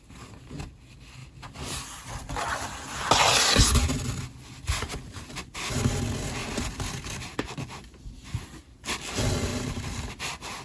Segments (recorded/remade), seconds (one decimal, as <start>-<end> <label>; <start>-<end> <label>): 0.0-6.4 recorded; 6.4-7.4 remade; 7.4-9.5 recorded; 9.5-10.1 remade; 10.1-10.6 recorded